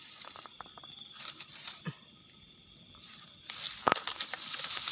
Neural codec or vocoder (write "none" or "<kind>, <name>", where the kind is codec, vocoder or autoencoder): none